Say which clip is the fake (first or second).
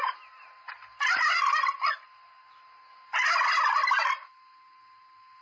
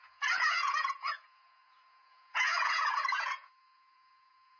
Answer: second